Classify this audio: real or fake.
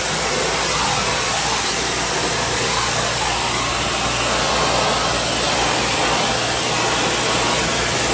real